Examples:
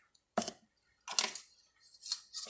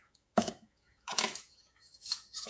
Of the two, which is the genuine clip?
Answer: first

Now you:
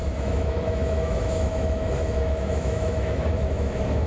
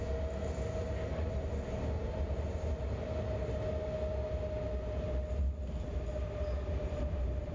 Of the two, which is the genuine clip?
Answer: second